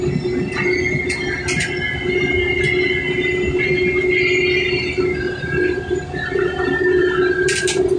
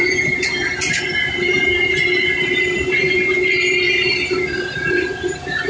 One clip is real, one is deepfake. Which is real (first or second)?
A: first